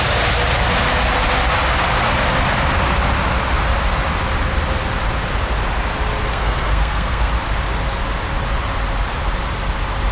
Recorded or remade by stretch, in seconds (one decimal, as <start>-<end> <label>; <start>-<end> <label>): 0.0-6.3 recorded; 6.3-7.3 remade; 7.3-10.1 recorded